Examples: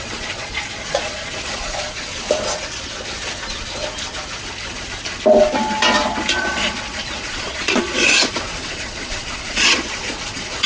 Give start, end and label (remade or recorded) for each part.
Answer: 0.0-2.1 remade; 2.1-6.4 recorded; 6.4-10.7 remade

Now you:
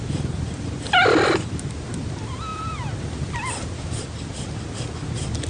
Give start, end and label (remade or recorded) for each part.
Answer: 0.0-5.5 recorded

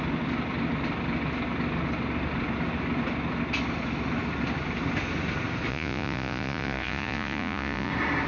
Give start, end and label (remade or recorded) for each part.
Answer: 0.0-5.7 recorded; 5.7-7.9 remade; 7.9-8.3 recorded

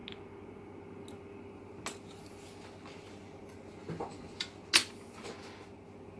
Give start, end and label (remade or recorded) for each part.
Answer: 0.0-6.2 recorded

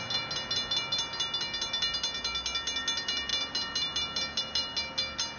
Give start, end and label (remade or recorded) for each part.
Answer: 0.0-5.4 recorded

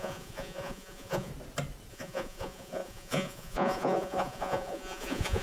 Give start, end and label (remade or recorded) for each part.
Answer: 0.0-1.3 remade; 1.3-1.9 recorded; 1.9-5.4 remade

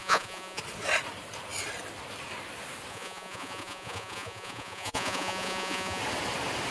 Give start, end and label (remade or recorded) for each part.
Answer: 0.0-0.6 remade; 0.6-2.9 recorded; 2.9-6.0 remade; 6.0-6.7 recorded

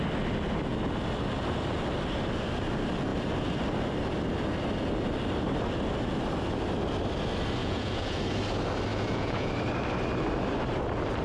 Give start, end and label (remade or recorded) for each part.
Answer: 0.0-7.6 recorded; 7.6-8.2 remade; 8.2-8.9 recorded; 8.9-9.5 remade; 9.5-11.2 recorded